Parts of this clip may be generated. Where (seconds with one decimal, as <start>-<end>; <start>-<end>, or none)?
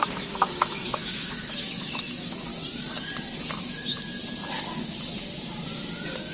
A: 0.0-2.5; 3.4-4.2